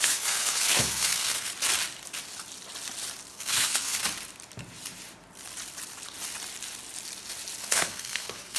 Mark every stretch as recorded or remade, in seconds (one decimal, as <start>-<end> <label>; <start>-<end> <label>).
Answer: 0.0-1.5 remade; 1.5-3.3 recorded; 3.3-4.0 remade; 4.0-7.7 recorded; 7.7-8.6 remade